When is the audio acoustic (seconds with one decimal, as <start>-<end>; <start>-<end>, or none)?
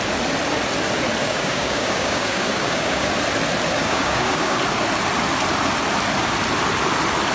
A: 0.0-1.2; 3.1-3.8; 4.6-7.3